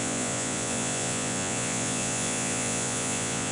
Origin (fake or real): fake